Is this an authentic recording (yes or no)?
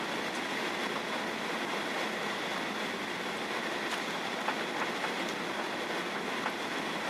yes